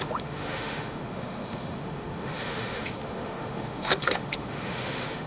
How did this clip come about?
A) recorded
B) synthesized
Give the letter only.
B